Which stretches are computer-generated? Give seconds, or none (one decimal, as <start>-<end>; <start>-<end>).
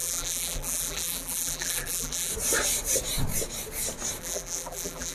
0.0-2.3; 4.2-5.1